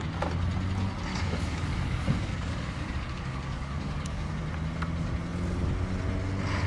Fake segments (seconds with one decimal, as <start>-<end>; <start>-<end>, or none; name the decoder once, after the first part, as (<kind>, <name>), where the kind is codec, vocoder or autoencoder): 1.1-4.3 (codec, DAC)